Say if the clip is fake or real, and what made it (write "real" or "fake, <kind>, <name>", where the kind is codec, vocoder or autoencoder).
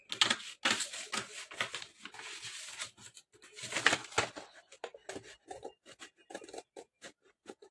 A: real